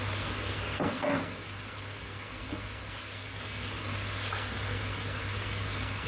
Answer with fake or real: fake